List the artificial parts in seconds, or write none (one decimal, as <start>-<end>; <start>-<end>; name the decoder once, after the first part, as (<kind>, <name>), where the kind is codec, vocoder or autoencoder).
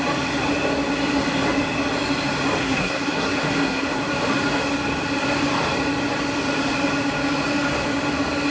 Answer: 2.6-4.0 (codec, SNAC)